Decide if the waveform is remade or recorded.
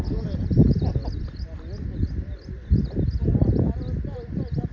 recorded